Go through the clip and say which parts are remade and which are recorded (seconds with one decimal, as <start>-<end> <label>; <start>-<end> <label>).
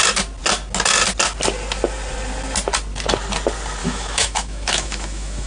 0.0-3.8 recorded; 3.8-5.5 remade